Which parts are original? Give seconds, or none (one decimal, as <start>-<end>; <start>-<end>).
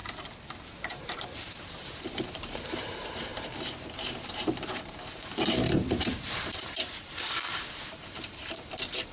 3.3-4.2